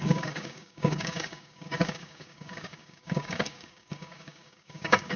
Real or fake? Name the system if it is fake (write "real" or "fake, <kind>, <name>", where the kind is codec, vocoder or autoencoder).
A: fake, codec, DAC